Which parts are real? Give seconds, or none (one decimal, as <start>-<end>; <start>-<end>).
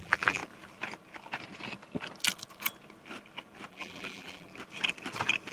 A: 0.4-3.7; 4.5-5.5